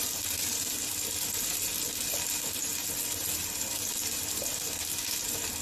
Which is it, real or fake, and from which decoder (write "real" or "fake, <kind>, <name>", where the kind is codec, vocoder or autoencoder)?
real